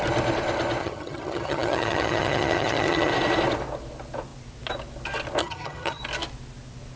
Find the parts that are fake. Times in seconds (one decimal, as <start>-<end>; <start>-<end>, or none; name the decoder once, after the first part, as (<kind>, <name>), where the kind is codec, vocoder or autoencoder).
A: 0.8-3.1 (vocoder, HiFi-GAN); 5.4-6.0